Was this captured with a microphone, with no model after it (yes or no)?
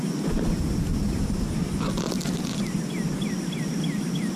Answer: yes